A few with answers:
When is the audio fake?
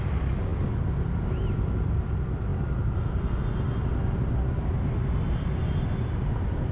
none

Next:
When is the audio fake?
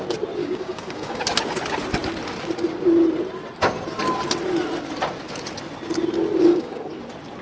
0.4-1.2; 6.5-7.0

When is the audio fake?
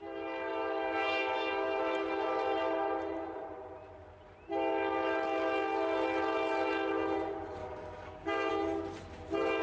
0.5-1.8; 7.6-8.5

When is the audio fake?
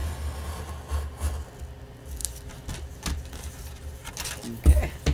none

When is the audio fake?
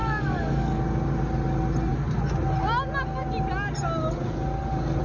0.0-0.8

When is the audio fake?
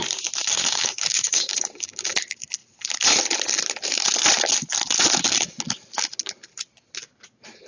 0.4-2.1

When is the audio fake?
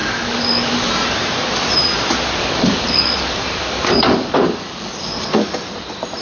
0.0-0.9; 2.4-5.2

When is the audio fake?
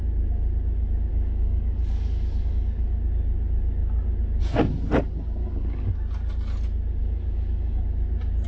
1.1-2.9; 5.4-5.9; 7.0-7.8